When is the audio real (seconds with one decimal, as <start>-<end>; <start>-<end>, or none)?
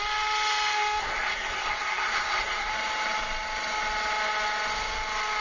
0.0-1.0; 2.7-5.4